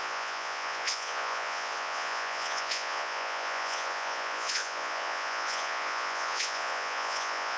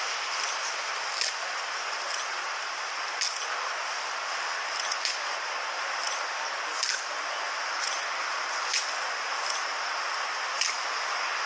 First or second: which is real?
second